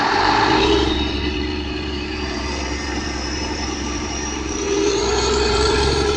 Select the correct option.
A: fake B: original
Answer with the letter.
A